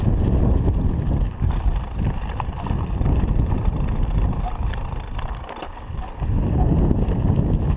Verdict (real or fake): real